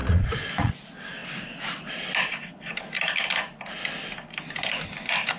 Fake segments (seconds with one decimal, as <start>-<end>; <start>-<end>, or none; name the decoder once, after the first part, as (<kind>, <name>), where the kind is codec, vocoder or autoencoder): 0.0-0.7 (vocoder, Vocos)